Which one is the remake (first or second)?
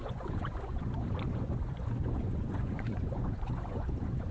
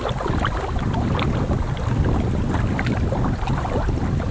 first